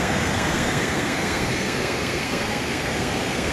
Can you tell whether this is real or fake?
fake